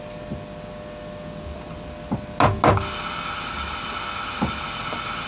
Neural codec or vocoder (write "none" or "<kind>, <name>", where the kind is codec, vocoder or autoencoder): none